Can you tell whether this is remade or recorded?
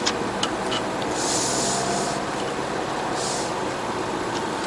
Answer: recorded